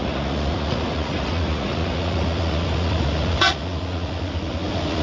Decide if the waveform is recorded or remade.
remade